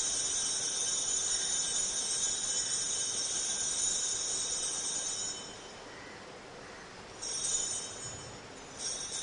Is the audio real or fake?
real